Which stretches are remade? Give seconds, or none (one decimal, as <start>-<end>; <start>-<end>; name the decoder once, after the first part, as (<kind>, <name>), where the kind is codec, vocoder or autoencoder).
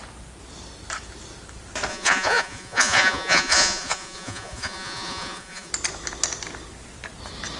1.9-5.7 (vocoder, Vocos)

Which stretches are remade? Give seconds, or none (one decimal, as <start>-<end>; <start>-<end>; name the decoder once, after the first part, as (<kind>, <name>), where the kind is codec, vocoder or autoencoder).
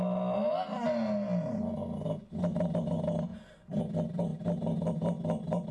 3.3-3.8 (vocoder, BigVGAN v2)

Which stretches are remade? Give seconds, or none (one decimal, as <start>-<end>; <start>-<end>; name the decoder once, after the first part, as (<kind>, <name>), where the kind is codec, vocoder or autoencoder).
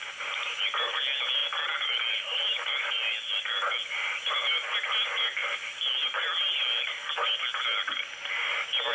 1.4-4.3 (vocoder, BigVGAN v2); 5.4-7.1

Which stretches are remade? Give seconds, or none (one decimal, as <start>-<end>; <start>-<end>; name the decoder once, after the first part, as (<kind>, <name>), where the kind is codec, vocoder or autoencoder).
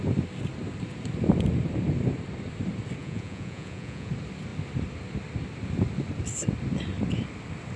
3.0-4.1 (vocoder, Vocos)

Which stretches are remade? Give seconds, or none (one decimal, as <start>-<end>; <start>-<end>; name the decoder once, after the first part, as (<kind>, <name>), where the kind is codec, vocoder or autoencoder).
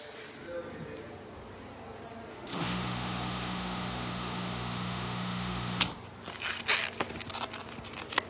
2.3-5.8 (autoencoder, DAC-VAE)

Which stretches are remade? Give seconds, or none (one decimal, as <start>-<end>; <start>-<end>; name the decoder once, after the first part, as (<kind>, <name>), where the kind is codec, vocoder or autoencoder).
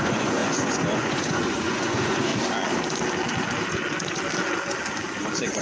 0.0-2.3 (vocoder, Vocos)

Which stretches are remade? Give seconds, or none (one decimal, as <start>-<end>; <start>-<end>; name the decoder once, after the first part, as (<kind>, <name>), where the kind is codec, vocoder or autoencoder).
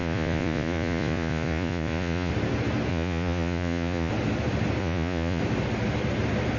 0.0-2.3 (vocoder, Vocos); 2.9-4.1; 4.8-5.4